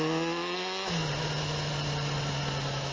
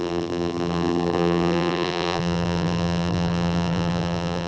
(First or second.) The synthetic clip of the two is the second